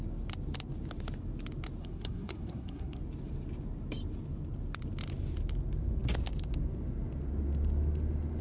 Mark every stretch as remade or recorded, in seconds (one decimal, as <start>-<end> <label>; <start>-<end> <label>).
0.0-1.8 recorded; 1.8-3.0 remade; 3.0-8.4 recorded